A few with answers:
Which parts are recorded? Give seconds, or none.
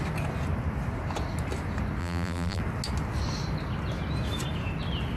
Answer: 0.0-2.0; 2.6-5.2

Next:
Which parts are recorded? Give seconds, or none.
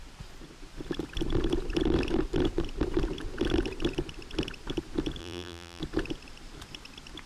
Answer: 0.0-5.2; 5.8-7.3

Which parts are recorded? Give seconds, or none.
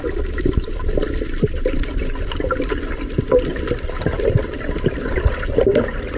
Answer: 0.0-6.2